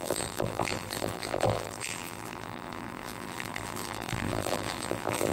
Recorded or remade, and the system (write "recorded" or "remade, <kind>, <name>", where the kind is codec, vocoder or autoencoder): remade, vocoder, BigVGAN v2